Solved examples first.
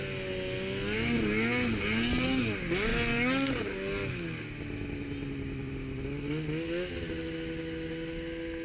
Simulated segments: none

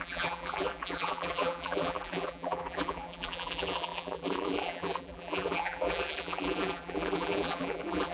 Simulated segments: 0.0-8.1